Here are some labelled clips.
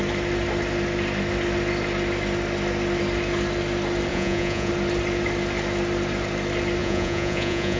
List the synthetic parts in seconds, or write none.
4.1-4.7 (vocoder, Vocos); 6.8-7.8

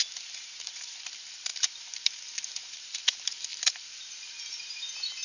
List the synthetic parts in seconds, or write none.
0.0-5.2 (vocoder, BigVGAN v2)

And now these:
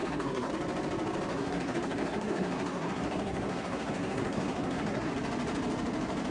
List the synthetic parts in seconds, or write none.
0.0-0.5 (codec, SNAC); 1.3-5.1

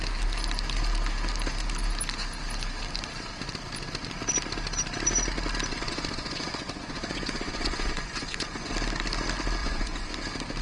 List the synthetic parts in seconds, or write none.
5.7-8.7 (vocoder, Vocos); 9.6-10.1

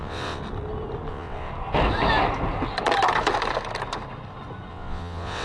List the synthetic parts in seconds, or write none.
0.0-0.4 (vocoder, WaveNeXt); 1.1-1.5; 4.7-5.4

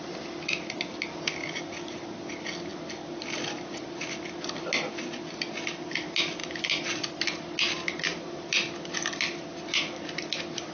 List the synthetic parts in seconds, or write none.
none

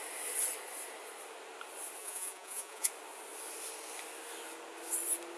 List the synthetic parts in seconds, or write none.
2.0-2.9 (vocoder, Vocos)